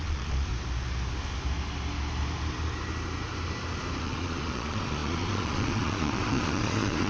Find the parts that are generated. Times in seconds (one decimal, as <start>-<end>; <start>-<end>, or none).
0.0-0.5; 4.0-7.1